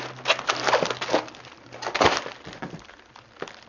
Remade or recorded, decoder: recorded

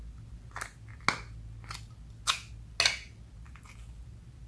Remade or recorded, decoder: recorded